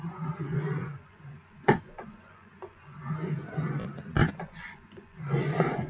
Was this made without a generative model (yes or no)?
no